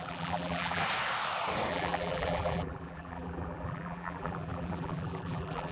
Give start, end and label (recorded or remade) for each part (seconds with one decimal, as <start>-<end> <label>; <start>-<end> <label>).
0.0-0.8 remade; 0.8-1.7 recorded; 1.7-5.7 remade